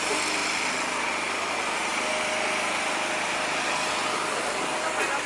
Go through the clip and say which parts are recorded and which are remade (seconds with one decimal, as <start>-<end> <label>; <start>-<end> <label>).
0.0-0.4 recorded; 0.4-0.9 remade; 0.9-1.9 recorded; 1.9-3.9 remade; 3.9-5.3 recorded